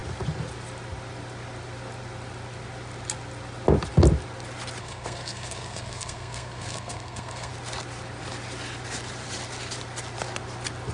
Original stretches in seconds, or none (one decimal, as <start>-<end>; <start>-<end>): 0.0-4.8; 7.5-10.9